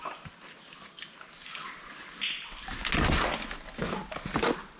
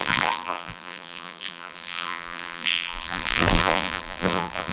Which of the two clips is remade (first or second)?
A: second